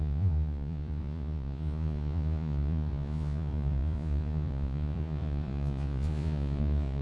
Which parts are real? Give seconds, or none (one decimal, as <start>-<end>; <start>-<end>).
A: none